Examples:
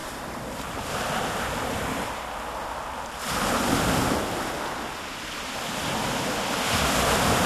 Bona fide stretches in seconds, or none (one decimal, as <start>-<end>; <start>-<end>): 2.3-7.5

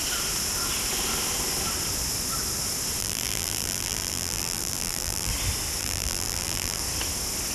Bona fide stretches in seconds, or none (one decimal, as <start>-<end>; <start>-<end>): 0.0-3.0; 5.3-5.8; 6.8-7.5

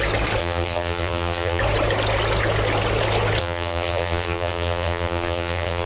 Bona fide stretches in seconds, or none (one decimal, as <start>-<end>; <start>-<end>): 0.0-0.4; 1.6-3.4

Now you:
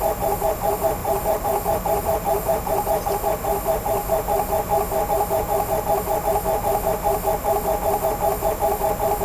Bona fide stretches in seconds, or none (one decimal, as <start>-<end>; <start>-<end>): 0.0-1.0; 3.1-9.2

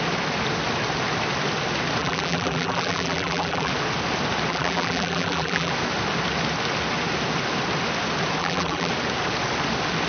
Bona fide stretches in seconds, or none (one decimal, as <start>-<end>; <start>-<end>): 0.0-2.0; 3.7-4.5; 5.7-8.4; 8.9-10.1

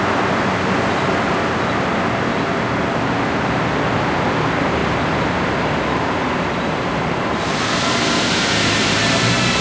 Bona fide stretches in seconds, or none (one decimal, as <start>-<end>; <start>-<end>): 0.0-4.8; 7.6-9.6

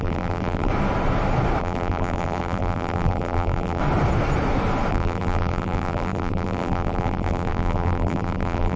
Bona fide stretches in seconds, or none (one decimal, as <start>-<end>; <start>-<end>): 0.7-1.6; 3.8-4.9

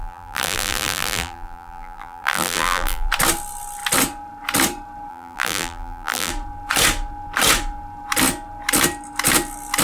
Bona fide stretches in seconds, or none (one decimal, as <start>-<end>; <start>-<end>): 3.1-5.1; 6.3-9.8